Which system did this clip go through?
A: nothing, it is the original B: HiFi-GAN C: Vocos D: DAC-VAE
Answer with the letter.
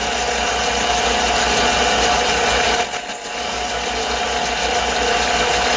A